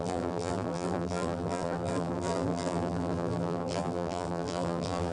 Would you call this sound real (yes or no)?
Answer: no